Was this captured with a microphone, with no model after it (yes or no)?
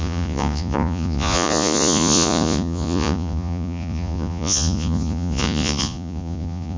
no